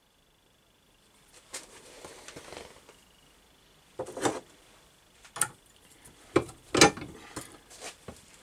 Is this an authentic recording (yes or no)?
yes